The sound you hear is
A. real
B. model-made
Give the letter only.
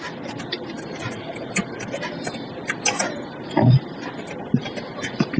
A